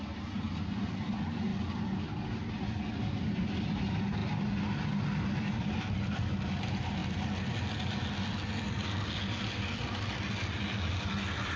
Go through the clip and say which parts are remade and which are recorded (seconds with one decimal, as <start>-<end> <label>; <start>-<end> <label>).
0.0-11.6 recorded